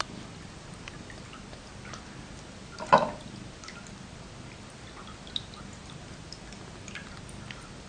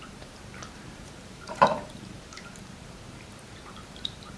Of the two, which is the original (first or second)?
first